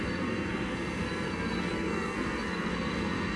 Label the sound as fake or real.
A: fake